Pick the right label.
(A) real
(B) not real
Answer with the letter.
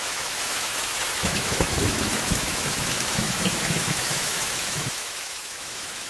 B